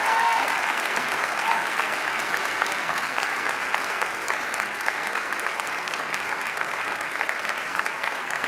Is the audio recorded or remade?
remade